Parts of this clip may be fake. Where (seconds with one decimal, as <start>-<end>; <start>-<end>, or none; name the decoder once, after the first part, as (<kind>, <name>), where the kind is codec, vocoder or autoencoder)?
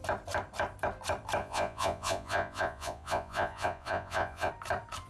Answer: 1.4-4.5 (vocoder, Vocos)